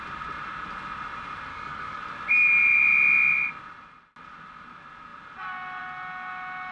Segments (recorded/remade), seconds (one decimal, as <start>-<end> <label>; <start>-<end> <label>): 0.0-1.5 recorded; 1.5-2.0 remade; 2.0-6.7 recorded